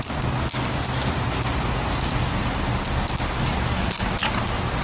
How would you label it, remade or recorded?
recorded